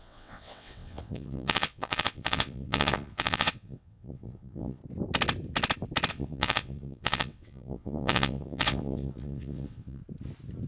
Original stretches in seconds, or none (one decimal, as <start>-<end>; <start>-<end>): 4.8-6.1; 10.0-10.7